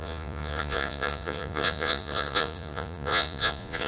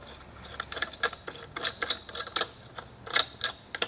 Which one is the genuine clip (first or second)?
second